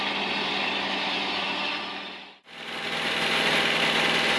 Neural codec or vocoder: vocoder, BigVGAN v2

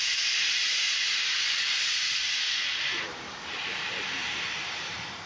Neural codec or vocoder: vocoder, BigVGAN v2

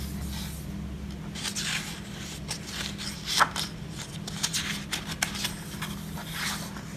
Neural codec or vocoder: none